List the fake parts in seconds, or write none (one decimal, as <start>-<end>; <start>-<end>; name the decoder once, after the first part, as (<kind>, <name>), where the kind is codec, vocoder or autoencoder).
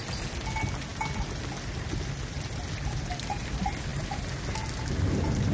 none